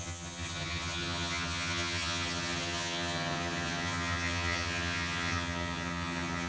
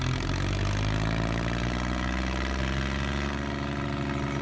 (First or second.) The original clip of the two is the second